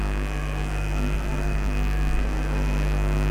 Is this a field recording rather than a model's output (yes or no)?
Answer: no